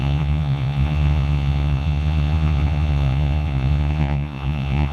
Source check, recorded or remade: remade